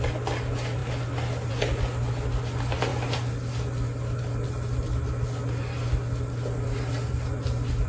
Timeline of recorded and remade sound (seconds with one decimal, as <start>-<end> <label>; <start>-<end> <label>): 0.0-7.9 recorded

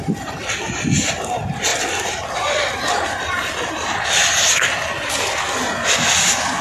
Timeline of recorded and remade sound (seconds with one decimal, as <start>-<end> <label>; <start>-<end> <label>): 0.0-6.6 recorded

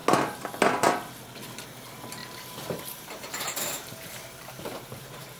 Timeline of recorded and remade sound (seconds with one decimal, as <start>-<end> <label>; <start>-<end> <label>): 0.0-2.2 recorded; 2.2-5.4 remade

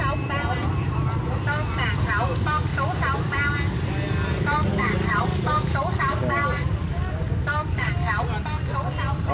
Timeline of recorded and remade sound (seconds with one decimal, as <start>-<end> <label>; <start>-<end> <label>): 0.0-4.7 recorded; 4.7-7.9 remade; 7.9-9.3 recorded